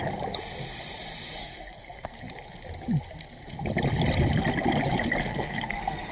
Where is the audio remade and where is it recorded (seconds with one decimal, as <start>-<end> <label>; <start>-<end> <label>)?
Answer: 0.0-1.4 recorded; 1.4-2.1 remade; 2.1-5.3 recorded; 5.3-6.1 remade